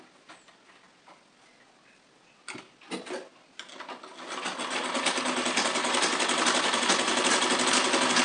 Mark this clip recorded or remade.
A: recorded